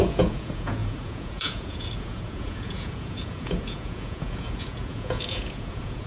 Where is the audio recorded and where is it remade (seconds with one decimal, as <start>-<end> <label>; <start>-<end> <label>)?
0.0-6.1 remade